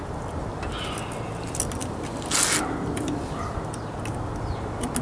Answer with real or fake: real